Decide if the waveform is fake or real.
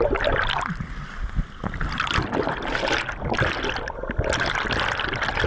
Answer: real